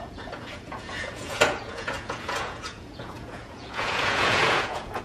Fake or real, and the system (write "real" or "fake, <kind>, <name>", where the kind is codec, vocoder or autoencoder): fake, vocoder, Vocos